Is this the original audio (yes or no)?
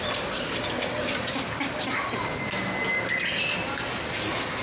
yes